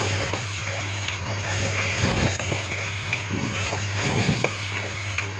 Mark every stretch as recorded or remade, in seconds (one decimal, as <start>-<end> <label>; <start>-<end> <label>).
0.0-5.4 remade